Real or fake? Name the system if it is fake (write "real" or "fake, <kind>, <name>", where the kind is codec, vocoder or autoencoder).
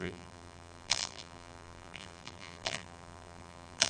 fake, vocoder, BigVGAN v2